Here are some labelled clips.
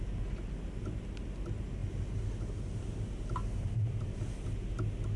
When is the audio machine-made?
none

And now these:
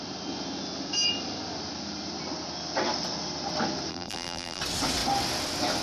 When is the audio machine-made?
3.9-4.6 (vocoder, BigVGAN v2)